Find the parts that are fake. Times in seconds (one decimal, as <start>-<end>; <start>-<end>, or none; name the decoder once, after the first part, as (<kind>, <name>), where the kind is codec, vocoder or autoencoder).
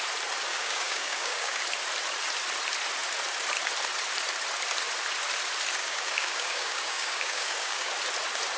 0.5-1.6 (codec, DAC); 5.8-7.9